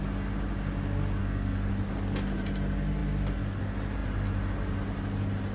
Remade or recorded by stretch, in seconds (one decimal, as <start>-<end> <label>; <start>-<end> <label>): 0.0-1.2 recorded; 1.2-1.7 remade; 1.7-5.5 recorded